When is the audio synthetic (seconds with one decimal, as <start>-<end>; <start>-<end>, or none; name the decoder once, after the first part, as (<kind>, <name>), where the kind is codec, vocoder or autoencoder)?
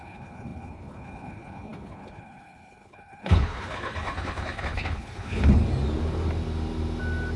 0.0-5.6 (codec, HILCodec)